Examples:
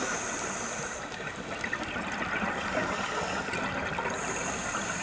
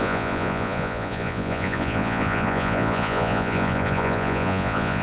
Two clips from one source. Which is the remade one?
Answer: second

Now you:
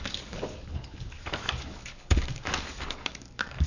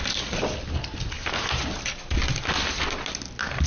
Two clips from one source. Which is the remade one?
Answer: first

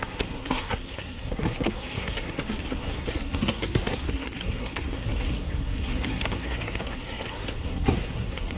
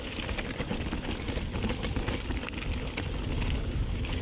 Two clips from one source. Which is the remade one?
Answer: first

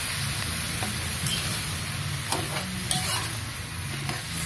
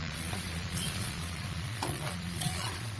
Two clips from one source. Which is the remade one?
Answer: second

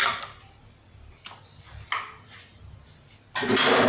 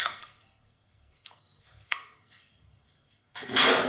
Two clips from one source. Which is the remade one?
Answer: second